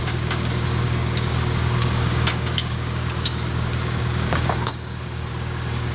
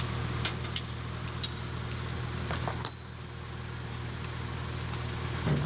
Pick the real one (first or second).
second